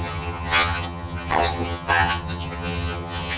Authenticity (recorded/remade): remade